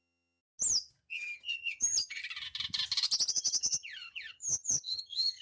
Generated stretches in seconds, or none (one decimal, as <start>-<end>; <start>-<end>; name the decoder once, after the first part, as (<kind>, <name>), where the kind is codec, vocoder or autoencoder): 0.0-0.4 (vocoder, HiFi-GAN); 1.1-2.2; 3.3-5.4